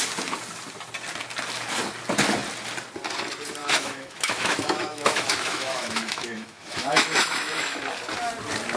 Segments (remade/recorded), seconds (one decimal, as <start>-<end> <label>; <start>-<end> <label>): 0.0-3.6 recorded; 3.6-7.8 remade; 7.8-8.8 recorded